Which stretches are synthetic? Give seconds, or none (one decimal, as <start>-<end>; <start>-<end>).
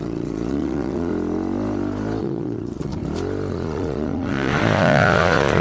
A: 0.0-1.1; 2.2-3.0; 3.5-5.6